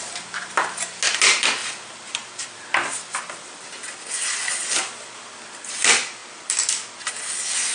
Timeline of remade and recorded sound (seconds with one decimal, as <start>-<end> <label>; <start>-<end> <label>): 0.0-1.6 recorded; 1.6-5.7 remade; 5.7-7.7 recorded